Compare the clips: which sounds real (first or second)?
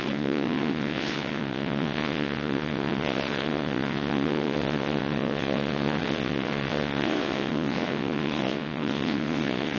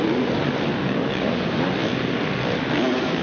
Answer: second